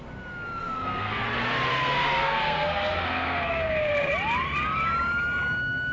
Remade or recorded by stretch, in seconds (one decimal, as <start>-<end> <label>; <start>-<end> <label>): 0.0-0.6 recorded; 0.6-1.2 remade; 1.2-1.7 recorded; 1.7-4.1 remade; 4.1-5.9 recorded